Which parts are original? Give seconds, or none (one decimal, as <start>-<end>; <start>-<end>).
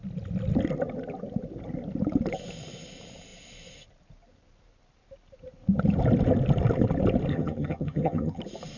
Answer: 0.0-7.3; 8.4-8.8